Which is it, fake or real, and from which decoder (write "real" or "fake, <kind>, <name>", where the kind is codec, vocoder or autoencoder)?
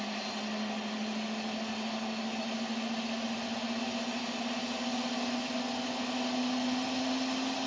real